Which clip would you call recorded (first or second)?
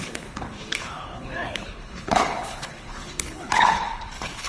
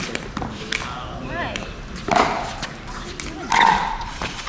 second